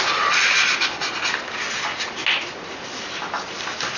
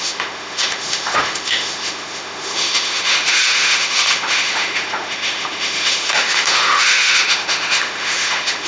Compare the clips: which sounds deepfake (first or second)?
second